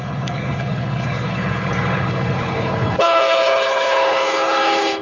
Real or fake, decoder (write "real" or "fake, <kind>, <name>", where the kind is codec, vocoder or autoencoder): fake, codec, HILCodec